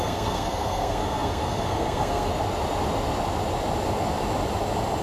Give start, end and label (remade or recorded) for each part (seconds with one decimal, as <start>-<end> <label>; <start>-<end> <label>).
0.0-2.3 remade; 2.3-5.0 recorded